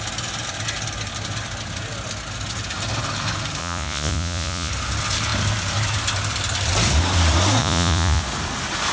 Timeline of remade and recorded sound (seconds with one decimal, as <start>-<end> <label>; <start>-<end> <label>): 0.0-3.6 recorded; 3.6-4.7 remade; 4.7-7.6 recorded; 7.6-8.2 remade; 8.2-8.9 recorded